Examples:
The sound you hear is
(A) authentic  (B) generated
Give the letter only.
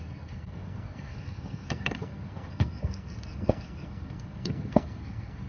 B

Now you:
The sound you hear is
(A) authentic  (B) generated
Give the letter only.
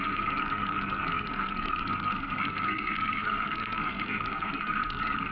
B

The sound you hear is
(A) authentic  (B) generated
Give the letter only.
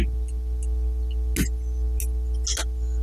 A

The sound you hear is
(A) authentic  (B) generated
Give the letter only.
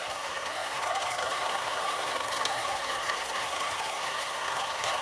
B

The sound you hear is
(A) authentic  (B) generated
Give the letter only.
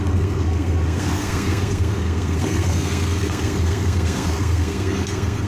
B